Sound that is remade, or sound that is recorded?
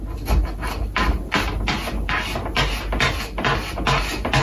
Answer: recorded